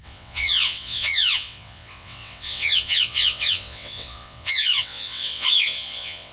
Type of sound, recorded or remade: remade